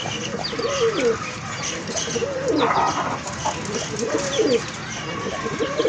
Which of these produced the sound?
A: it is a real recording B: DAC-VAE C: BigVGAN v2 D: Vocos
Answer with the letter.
A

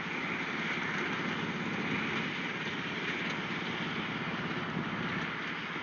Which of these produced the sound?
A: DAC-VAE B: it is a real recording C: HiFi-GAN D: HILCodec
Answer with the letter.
B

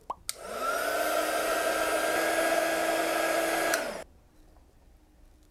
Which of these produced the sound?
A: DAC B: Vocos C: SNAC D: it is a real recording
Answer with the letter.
D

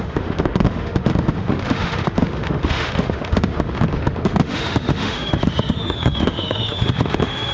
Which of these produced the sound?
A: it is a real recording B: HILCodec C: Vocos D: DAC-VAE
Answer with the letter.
D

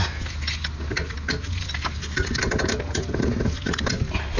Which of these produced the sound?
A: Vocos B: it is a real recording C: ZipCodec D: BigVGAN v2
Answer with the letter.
B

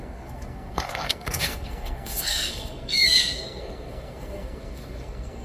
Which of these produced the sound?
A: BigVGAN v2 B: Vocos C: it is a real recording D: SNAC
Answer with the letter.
D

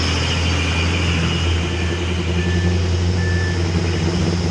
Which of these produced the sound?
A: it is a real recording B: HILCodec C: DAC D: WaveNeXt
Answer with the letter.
A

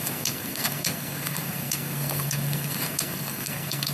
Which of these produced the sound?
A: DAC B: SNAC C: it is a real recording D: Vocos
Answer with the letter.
B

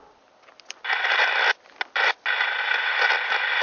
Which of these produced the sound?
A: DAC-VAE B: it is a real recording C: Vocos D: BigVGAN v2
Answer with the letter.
B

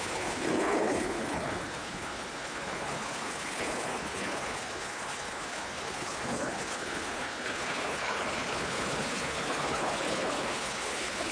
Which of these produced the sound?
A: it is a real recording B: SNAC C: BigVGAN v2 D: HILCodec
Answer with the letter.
D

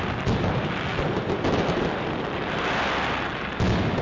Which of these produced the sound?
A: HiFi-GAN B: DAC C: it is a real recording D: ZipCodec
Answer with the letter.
C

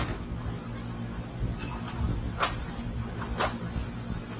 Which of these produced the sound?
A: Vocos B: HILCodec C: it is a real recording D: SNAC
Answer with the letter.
C